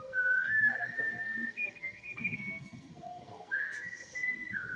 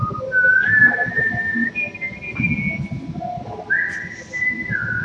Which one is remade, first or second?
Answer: first